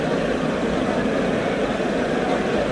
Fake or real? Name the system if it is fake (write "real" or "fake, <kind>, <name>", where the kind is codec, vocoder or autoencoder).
real